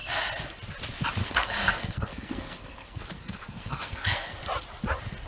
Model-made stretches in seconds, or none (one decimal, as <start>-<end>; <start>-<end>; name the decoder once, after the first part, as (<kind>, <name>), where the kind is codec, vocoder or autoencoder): 1.2-4.4 (codec, SNAC)

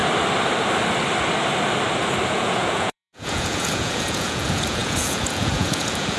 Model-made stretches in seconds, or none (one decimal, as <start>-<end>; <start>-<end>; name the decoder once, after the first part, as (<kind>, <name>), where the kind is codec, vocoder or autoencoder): 2.3-6.2 (vocoder, Vocos)

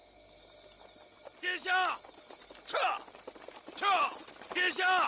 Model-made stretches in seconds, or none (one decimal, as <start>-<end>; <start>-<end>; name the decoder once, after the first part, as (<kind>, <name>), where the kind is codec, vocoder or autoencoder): none